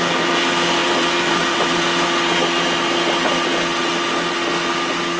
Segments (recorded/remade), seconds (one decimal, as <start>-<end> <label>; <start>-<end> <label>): 0.0-0.8 recorded; 0.8-1.8 remade; 1.8-5.2 recorded